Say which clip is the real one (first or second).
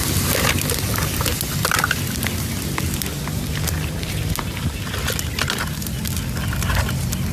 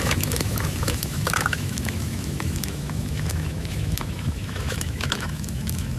first